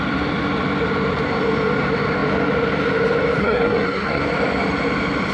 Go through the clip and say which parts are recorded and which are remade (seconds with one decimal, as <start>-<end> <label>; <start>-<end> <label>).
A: 0.0-3.4 recorded; 3.4-4.2 remade; 4.2-5.3 recorded